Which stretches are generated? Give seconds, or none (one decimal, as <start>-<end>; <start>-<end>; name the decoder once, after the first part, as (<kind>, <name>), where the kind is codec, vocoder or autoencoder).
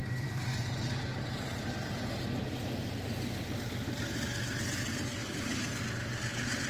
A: 0.0-1.7 (vocoder, BigVGAN v2); 5.2-5.8